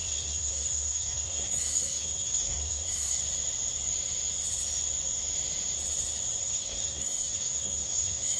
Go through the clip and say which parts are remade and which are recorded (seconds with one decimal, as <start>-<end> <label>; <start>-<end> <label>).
0.0-3.2 remade; 3.2-6.4 recorded; 6.4-8.4 remade